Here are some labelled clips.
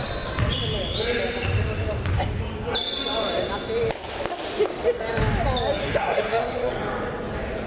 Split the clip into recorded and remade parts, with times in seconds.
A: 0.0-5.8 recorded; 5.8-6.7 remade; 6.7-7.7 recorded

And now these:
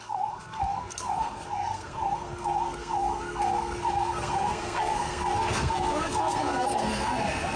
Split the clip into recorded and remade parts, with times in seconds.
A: 0.0-7.6 remade

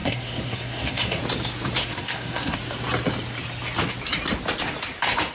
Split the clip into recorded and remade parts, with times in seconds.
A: 0.0-1.2 remade; 1.2-1.8 recorded; 1.8-2.6 remade; 2.6-5.3 recorded

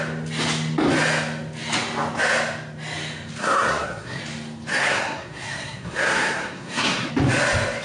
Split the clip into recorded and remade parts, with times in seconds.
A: 0.0-3.4 recorded; 3.4-4.2 remade; 4.2-4.7 recorded; 4.7-7.1 remade; 7.1-7.8 recorded

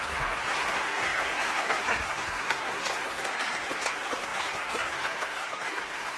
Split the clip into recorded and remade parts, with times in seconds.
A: 0.0-6.2 remade

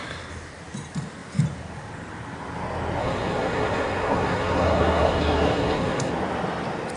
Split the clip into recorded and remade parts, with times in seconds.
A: 0.0-3.0 recorded; 3.0-6.1 remade; 6.1-7.0 recorded